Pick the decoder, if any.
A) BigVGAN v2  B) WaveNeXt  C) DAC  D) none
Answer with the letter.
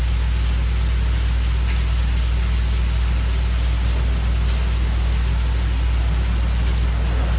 D